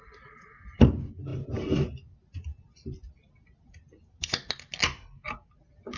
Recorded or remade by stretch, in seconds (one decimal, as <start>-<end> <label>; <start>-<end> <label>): 0.0-6.0 recorded

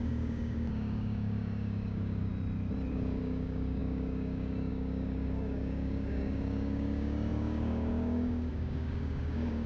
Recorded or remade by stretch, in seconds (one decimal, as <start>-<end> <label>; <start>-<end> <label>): 0.0-2.3 remade; 2.3-2.9 recorded; 2.9-9.7 remade

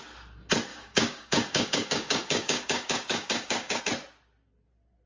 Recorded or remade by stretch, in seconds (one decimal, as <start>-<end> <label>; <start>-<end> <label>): 0.0-0.7 recorded; 0.7-3.8 remade; 3.8-5.1 recorded

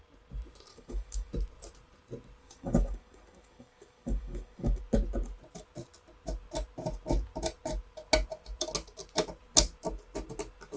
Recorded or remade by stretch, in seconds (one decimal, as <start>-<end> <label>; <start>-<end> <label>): 0.0-0.7 recorded; 0.7-1.3 remade; 1.3-2.4 recorded; 2.4-4.8 remade; 4.8-10.8 recorded

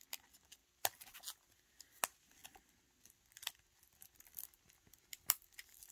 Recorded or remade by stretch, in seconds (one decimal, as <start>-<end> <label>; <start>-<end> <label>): 0.0-5.9 recorded